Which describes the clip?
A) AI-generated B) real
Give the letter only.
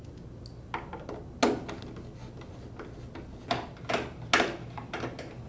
B